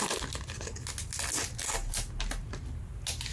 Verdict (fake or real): real